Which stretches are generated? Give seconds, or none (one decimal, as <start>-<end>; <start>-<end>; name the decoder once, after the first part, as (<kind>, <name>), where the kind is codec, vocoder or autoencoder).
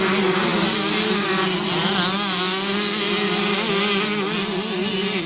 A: none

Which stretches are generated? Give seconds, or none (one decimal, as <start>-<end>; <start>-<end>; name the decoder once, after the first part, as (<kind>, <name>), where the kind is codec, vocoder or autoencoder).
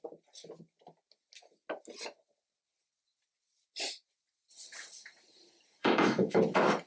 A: 5.8-6.4 (autoencoder, DAC-VAE)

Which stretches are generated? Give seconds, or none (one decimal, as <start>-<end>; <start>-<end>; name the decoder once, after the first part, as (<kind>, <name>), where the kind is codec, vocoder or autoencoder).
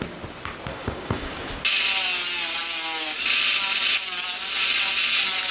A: 0.7-1.4 (codec, DAC)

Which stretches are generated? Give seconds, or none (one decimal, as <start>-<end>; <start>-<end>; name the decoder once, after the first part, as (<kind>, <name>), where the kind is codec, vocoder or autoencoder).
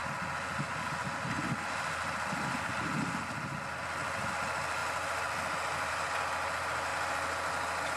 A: 0.0-3.4 (vocoder, BigVGAN v2)